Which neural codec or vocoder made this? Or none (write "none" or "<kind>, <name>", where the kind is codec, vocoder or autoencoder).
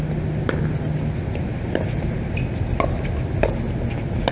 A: none